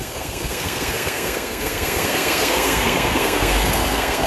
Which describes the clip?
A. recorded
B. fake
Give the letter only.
B